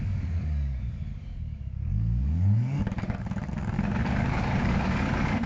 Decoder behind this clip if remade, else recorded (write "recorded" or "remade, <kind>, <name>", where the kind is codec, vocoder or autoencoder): remade, codec, DAC